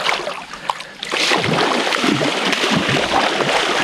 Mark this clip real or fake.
real